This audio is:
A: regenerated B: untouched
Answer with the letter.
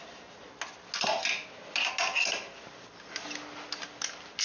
B